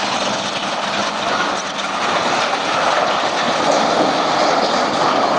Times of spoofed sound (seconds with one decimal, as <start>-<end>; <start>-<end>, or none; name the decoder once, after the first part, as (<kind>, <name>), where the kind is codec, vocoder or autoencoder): 1.0-1.6 (vocoder, Vocos)